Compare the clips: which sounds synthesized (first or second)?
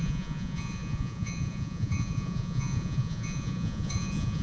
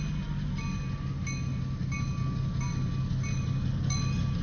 first